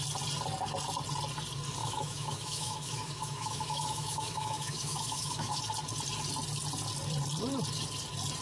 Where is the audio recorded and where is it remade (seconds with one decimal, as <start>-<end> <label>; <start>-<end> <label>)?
0.0-1.8 recorded; 1.8-5.6 remade; 5.6-8.4 recorded